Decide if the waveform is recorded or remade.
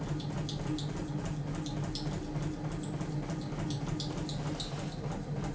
recorded